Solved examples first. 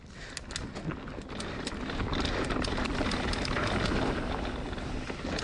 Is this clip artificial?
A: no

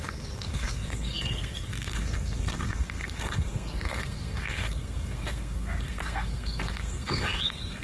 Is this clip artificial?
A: yes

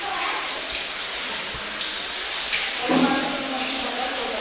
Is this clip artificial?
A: no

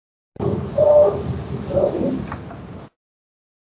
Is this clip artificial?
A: no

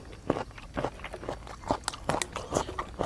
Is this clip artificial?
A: no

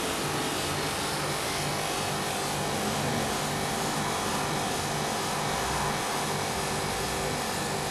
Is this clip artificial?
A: no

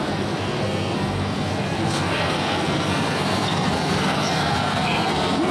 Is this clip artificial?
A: yes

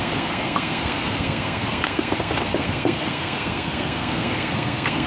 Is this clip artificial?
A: yes